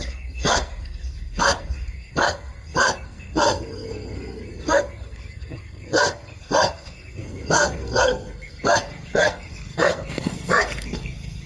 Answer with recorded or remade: remade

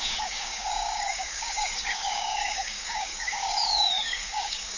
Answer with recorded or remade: remade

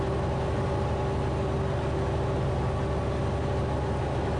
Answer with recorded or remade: recorded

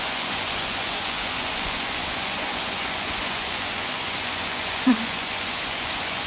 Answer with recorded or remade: remade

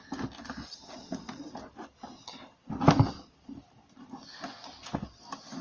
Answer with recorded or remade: recorded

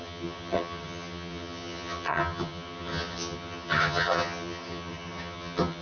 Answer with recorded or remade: remade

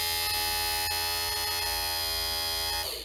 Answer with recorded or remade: recorded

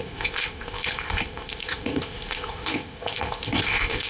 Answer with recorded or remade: remade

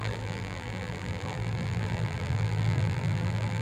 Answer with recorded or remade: remade